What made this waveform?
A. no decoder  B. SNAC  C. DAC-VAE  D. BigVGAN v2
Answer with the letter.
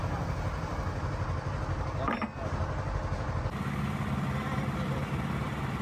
A